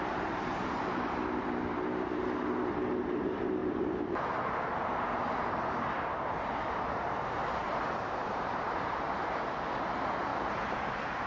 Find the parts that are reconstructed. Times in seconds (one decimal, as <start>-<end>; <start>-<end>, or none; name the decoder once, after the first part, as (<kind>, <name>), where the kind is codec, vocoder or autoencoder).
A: 3.6-4.9 (vocoder, BigVGAN v2); 7.6-8.8; 10.3-11.3